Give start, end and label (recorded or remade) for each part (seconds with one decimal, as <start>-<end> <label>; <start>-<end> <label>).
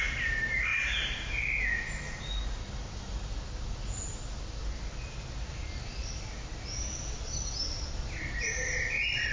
0.0-9.3 recorded